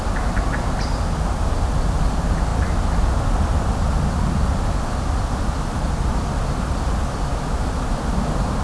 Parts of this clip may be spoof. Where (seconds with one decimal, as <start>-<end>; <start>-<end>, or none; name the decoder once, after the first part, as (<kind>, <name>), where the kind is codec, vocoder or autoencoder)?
none